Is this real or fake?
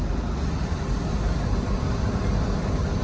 real